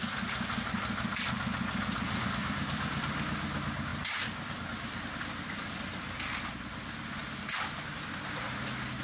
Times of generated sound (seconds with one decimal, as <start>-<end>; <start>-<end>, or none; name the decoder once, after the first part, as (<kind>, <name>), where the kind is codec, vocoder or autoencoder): none